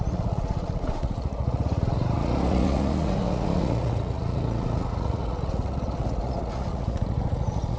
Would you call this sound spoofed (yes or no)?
yes